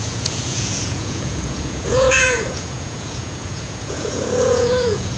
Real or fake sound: fake